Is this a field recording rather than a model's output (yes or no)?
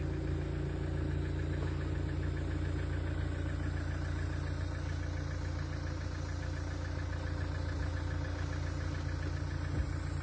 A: yes